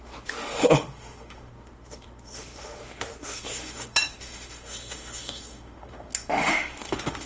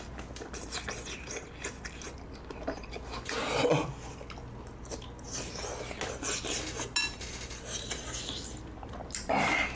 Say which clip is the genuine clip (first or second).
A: second